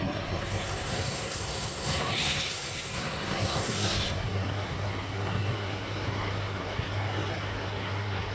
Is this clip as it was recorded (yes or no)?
no